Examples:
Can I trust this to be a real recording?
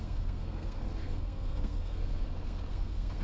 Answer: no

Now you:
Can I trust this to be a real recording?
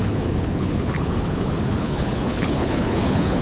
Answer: no